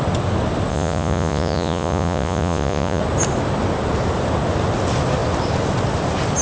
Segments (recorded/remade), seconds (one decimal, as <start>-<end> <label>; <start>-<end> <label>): 0.0-0.7 recorded; 0.7-3.0 remade; 3.0-6.4 recorded